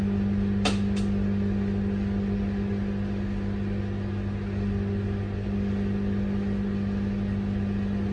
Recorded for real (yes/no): yes